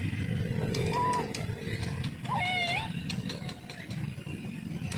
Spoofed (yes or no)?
yes